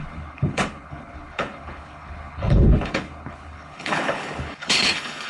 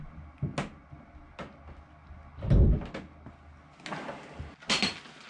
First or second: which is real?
second